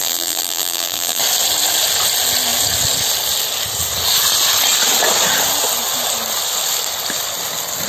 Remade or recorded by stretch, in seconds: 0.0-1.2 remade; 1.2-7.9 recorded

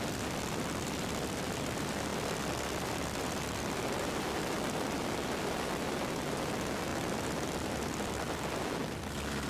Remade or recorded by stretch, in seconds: 0.0-6.9 recorded; 6.9-8.6 remade; 8.6-9.5 recorded

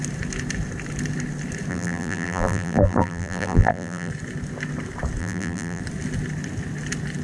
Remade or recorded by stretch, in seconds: 0.0-1.7 recorded; 1.7-4.1 remade; 4.1-5.2 recorded; 5.2-5.8 remade; 5.8-7.2 recorded

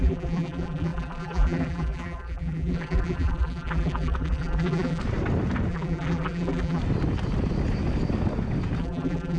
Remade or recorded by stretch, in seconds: 0.0-5.0 remade; 5.0-5.7 recorded; 5.7-6.8 remade; 6.8-8.8 recorded; 8.8-9.4 remade

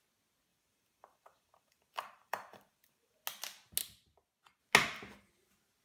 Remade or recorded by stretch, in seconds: 0.0-0.5 recorded; 0.5-3.2 remade; 3.2-5.8 recorded

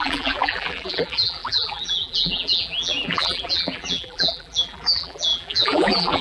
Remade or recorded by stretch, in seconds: 0.0-6.2 remade